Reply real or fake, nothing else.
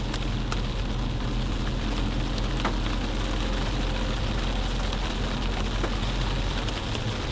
real